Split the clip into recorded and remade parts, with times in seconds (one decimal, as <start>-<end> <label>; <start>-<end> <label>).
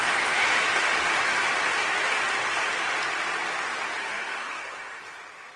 0.0-4.0 recorded; 4.0-5.0 remade; 5.0-5.6 recorded